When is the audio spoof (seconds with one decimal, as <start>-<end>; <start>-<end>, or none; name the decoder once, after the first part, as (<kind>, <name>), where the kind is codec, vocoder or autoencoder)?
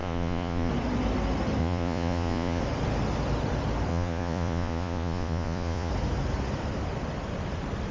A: 0.0-0.7 (vocoder, Vocos); 1.6-2.6; 3.9-5.9